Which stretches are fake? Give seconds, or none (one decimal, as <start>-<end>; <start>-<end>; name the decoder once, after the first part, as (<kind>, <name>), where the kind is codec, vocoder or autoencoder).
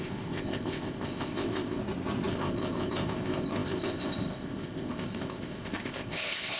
0.0-1.8 (codec, ZipCodec); 2.3-6.6